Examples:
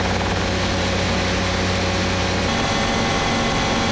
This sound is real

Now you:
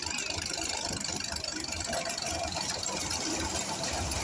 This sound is real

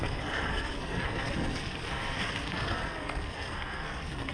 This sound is fake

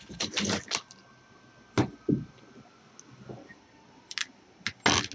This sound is real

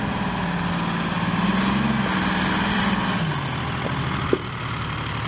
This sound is real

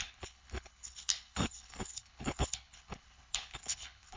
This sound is fake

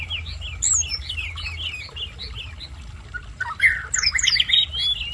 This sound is real